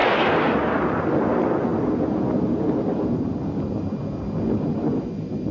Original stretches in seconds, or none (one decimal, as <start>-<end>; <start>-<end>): 0.0-5.5